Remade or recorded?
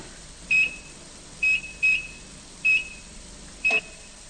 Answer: remade